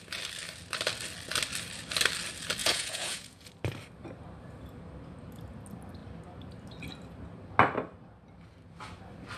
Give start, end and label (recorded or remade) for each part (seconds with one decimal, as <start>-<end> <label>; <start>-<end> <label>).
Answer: 0.0-2.6 recorded; 2.6-3.5 remade; 3.5-9.4 recorded